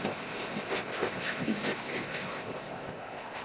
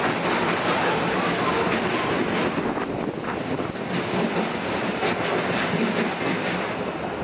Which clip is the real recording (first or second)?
second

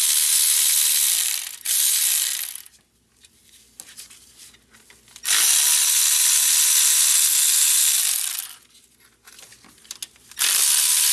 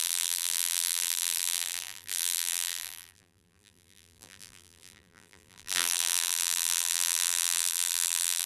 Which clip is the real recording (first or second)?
first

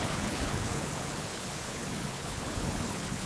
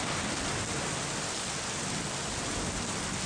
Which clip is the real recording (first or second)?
second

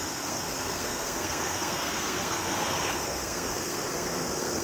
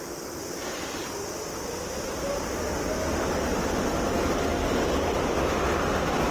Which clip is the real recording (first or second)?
second